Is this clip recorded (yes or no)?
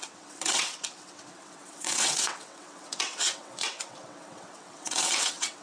no